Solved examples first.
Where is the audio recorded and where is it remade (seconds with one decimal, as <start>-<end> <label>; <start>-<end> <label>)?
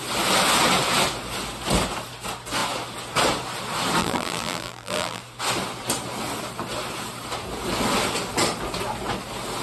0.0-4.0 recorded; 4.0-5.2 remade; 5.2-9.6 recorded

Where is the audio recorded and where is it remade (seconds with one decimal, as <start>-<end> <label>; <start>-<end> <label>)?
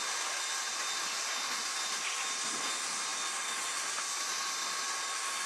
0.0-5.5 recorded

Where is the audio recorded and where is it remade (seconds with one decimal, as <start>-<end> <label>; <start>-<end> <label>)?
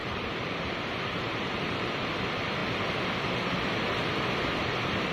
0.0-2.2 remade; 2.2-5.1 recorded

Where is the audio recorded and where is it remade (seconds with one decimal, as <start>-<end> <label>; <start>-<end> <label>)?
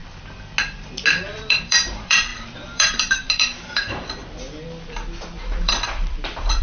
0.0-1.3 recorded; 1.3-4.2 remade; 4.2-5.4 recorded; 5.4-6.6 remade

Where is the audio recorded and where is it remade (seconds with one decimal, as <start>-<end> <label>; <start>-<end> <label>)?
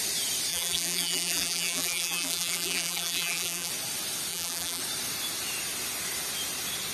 0.0-0.5 recorded; 0.5-3.7 remade; 3.7-4.3 recorded; 4.3-4.8 remade; 4.8-6.9 recorded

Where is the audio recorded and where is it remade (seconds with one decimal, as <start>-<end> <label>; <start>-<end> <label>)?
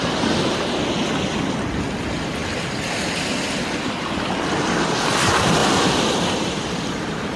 0.0-5.6 recorded; 5.6-7.0 remade; 7.0-7.4 recorded